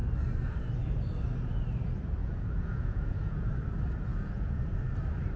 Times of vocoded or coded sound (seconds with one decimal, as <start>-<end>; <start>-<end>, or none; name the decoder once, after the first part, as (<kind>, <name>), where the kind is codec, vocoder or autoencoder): 2.2-3.5 (vocoder, Vocos); 4.1-4.6